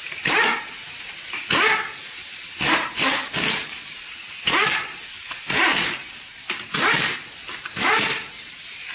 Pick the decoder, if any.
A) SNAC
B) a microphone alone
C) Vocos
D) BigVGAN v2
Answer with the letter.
D